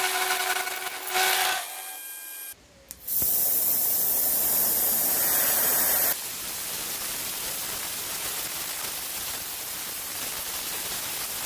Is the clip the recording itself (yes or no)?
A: yes